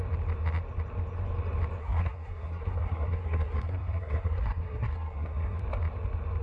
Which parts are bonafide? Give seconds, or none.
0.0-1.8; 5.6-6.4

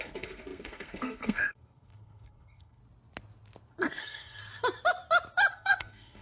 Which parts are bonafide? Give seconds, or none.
2.8-4.0; 4.4-5.5

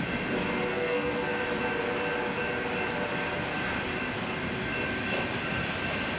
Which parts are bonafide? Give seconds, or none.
0.0-0.7; 1.4-6.2

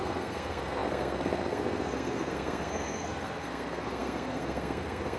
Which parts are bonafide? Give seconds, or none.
none

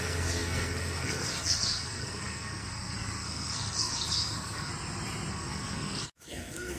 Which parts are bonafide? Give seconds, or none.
4.7-5.3

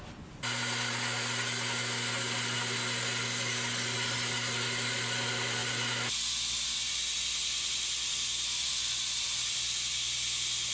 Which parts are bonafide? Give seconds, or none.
0.0-10.7